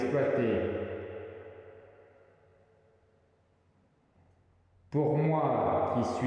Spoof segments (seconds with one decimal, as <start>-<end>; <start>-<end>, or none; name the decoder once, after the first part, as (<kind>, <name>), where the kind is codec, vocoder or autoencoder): none